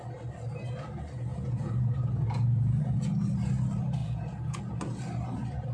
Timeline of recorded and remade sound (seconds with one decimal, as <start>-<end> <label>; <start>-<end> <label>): 0.0-1.3 recorded; 1.3-3.1 remade; 3.1-4.0 recorded; 4.0-4.6 remade; 4.6-5.7 recorded